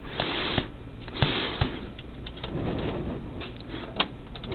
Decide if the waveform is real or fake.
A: real